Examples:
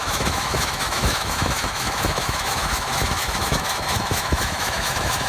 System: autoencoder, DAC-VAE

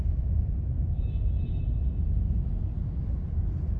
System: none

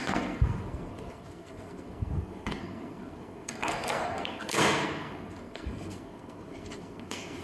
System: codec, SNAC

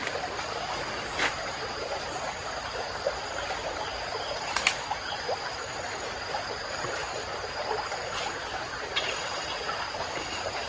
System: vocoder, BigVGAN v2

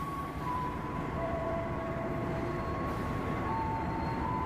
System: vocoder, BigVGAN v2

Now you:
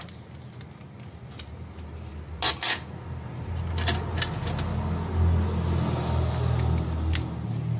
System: none